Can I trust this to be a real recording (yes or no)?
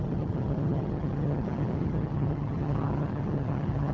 no